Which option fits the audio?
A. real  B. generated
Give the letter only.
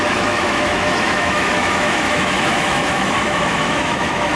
B